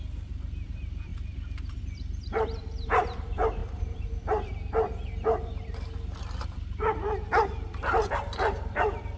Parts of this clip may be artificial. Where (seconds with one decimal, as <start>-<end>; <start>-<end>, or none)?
none